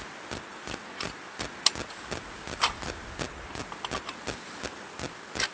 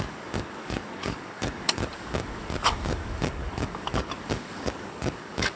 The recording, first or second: first